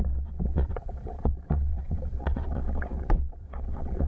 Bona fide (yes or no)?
no